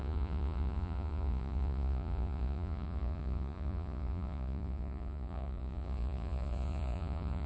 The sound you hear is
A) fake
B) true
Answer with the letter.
A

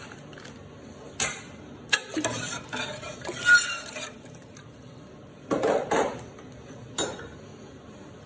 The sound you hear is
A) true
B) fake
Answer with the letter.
A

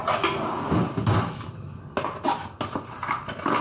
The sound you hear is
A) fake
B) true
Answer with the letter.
B